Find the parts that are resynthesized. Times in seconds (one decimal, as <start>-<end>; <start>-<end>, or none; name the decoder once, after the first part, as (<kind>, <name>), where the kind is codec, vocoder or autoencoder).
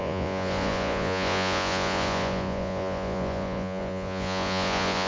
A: 0.0-5.1 (vocoder, Vocos)